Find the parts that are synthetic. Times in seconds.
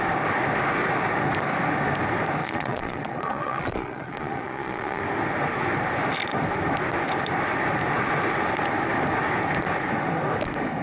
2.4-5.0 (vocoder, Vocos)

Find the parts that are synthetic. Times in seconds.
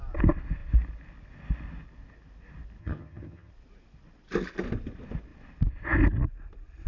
2.8-3.5 (vocoder, HiFi-GAN)